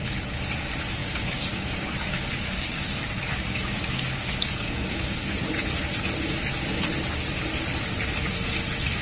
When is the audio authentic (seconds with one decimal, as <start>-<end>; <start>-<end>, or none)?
0.0-1.0; 5.2-9.0